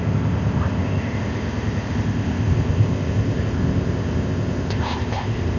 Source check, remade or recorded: remade